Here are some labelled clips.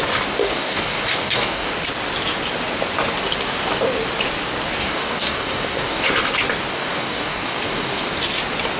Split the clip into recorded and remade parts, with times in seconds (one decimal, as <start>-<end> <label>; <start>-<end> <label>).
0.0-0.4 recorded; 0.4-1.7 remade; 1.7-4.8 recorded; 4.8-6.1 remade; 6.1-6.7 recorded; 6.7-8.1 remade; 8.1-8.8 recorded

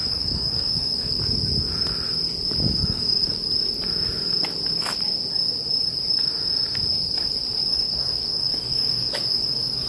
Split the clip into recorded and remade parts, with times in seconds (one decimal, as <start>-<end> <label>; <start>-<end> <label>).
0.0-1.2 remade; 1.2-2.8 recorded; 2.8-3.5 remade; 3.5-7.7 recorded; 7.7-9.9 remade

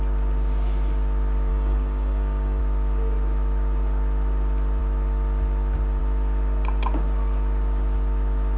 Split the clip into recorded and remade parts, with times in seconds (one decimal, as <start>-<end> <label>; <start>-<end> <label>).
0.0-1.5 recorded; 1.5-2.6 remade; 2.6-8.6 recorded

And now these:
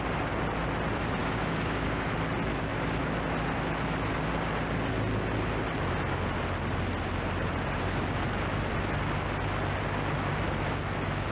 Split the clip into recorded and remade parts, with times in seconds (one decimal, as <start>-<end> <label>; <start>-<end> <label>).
0.0-1.2 recorded; 1.2-2.1 remade; 2.1-11.3 recorded

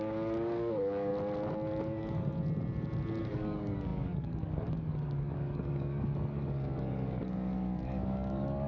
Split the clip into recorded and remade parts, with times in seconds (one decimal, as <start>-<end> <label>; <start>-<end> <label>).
0.0-1.1 remade; 1.1-1.8 recorded; 1.8-2.3 remade; 2.3-3.2 recorded; 3.2-8.7 remade

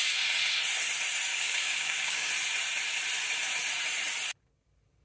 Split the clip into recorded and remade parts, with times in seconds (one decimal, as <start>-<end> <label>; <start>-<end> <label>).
0.0-1.3 recorded; 1.3-2.3 remade; 2.3-5.0 recorded